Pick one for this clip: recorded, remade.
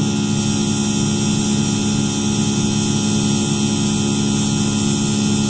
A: recorded